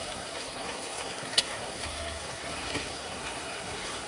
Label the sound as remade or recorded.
remade